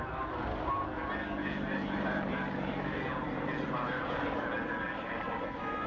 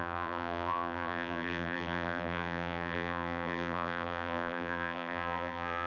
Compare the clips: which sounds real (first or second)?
first